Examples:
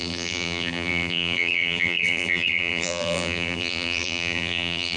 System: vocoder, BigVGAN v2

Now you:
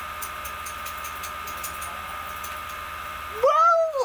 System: none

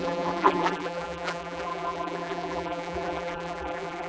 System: vocoder, BigVGAN v2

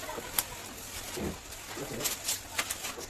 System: none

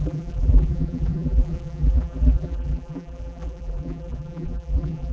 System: vocoder, BigVGAN v2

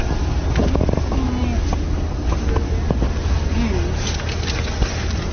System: none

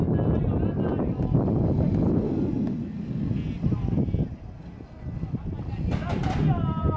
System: none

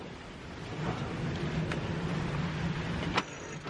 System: none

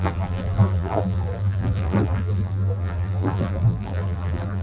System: vocoder, BigVGAN v2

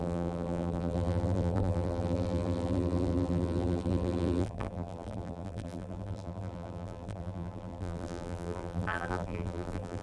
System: vocoder, BigVGAN v2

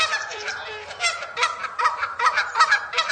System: vocoder, BigVGAN v2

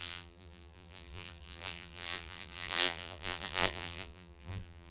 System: vocoder, BigVGAN v2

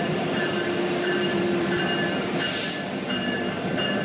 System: vocoder, BigVGAN v2